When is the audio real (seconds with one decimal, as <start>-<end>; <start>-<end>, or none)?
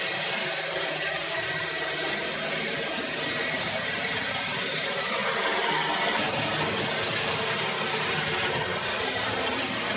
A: 5.2-9.4